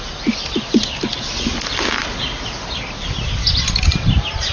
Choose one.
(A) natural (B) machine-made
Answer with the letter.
A